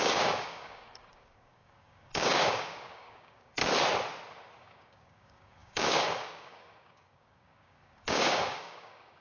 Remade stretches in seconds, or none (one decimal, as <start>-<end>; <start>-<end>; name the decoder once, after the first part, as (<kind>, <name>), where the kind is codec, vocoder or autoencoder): 0.0-3.6 (codec, DAC); 4.6-9.2